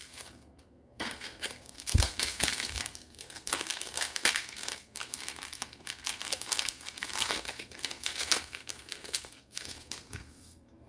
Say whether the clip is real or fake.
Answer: fake